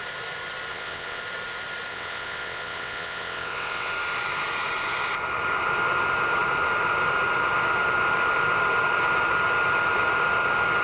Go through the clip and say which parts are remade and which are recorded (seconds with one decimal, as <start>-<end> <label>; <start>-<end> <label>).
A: 0.0-0.7 recorded; 0.7-1.2 remade; 1.2-1.9 recorded; 1.9-3.9 remade; 3.9-10.8 recorded